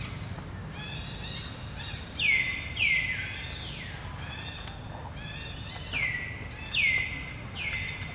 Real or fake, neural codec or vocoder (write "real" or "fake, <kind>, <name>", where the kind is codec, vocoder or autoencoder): real